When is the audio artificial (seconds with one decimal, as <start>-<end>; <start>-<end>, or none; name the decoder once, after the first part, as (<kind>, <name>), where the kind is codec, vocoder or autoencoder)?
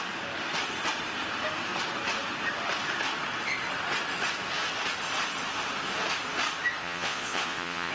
6.8-7.9 (vocoder, Vocos)